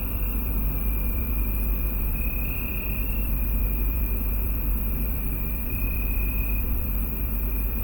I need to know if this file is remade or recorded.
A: remade